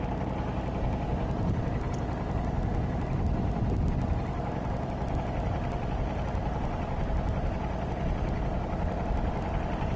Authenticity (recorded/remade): recorded